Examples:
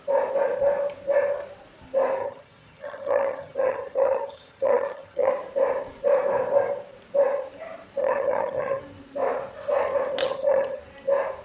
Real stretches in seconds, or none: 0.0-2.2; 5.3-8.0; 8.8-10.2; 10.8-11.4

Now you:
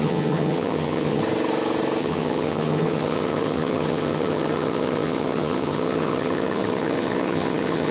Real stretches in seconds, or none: 1.2-2.0

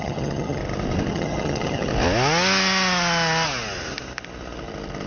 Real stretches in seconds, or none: 0.6-1.1; 1.9-5.1

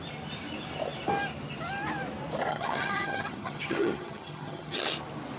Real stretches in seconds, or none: 0.0-2.5; 4.9-5.4

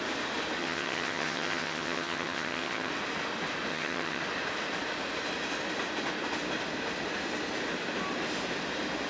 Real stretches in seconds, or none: 0.0-0.6; 2.9-3.7; 4.2-9.1